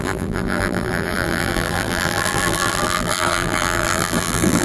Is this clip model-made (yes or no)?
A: yes